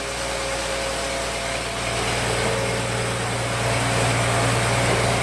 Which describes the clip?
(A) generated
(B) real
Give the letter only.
B